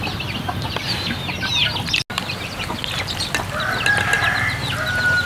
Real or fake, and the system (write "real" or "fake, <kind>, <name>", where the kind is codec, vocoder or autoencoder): real